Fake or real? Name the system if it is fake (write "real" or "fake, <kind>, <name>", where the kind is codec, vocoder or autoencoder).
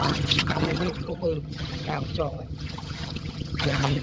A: fake, vocoder, HiFi-GAN